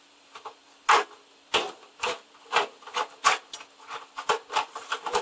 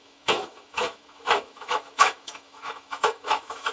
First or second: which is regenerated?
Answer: second